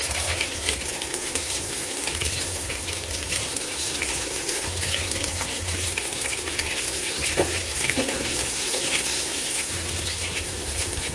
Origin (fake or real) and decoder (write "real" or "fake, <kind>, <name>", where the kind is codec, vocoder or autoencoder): fake, codec, SNAC